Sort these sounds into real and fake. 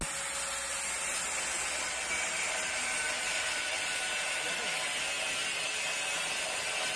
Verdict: real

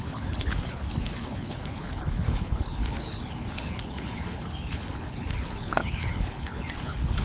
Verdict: fake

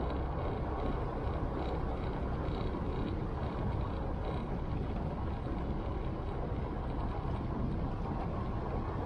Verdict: real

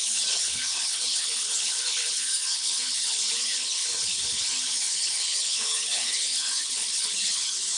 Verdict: fake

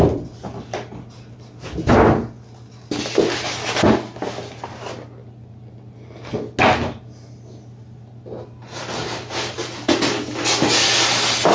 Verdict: real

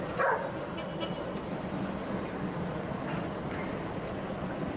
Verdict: real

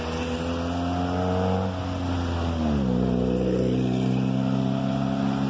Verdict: real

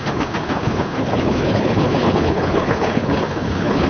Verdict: fake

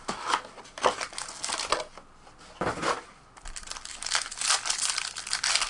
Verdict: real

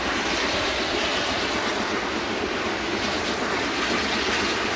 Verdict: real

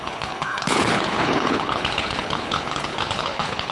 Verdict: fake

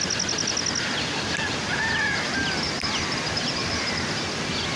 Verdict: real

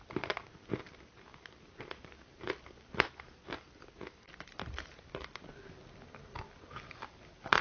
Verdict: real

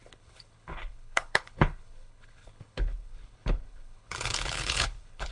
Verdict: fake